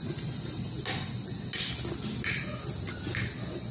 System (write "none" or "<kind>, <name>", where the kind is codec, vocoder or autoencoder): none